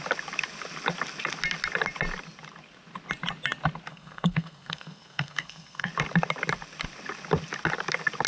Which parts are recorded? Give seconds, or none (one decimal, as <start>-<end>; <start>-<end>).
0.0-3.9; 5.9-8.3